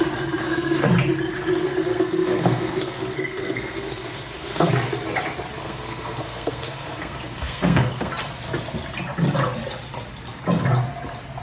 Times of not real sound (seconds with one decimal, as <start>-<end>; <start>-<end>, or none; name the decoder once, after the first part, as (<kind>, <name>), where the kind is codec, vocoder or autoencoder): 0.4-0.9 (codec, SNAC); 1.6-4.7; 5.6-8.1

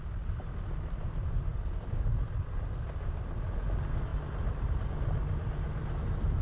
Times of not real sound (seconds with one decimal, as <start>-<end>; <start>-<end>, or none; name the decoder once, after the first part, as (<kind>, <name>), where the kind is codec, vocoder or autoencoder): none

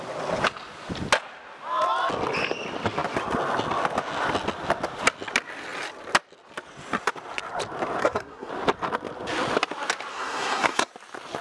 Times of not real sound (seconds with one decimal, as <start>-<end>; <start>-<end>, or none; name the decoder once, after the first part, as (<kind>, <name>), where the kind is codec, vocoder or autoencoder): 8.0-8.5 (codec, SNAC); 10.1-10.9

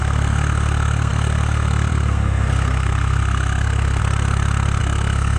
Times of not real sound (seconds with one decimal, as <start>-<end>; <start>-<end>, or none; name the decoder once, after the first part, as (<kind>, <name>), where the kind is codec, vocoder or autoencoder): 0.0-4.0 (codec, SNAC); 4.8-5.4

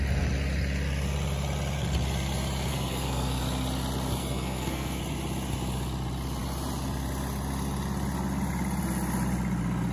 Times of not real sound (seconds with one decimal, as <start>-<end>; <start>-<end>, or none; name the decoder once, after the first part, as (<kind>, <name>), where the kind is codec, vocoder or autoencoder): 2.7-3.4 (codec, SNAC); 4.2-5.0

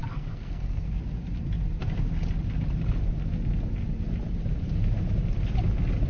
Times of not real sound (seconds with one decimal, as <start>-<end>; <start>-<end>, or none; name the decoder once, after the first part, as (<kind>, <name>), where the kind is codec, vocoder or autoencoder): 0.0-1.0 (codec, SNAC)

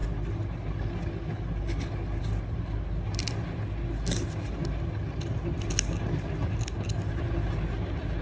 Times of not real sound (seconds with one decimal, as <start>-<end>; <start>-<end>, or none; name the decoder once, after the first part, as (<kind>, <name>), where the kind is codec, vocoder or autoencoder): none

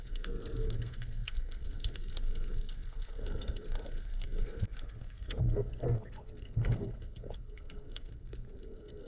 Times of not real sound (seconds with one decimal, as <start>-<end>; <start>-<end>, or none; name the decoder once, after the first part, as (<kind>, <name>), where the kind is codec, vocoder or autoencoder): 0.0-9.1 (codec, SNAC)